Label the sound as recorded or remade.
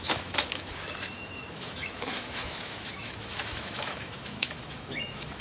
remade